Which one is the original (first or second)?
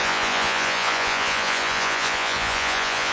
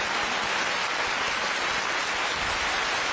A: second